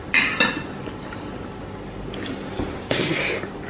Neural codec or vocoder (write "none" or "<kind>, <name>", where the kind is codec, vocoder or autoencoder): none